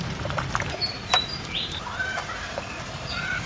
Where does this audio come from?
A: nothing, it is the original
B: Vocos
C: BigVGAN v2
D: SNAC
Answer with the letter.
C